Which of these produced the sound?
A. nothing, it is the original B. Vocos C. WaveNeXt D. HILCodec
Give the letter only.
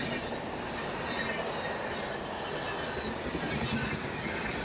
A